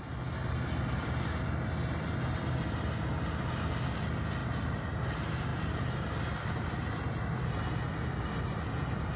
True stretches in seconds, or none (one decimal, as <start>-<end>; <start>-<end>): 0.0-4.4; 5.0-9.2

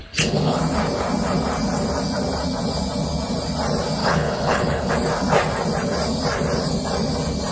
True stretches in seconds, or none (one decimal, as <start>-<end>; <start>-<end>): 0.6-4.0; 4.9-7.5

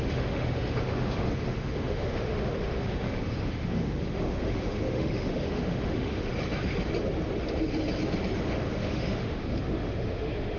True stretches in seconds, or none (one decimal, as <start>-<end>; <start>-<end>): 6.3-8.5